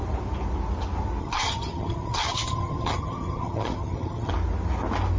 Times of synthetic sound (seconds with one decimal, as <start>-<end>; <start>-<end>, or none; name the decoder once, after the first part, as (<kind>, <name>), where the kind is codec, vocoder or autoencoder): 1.2-4.3 (vocoder, HiFi-GAN)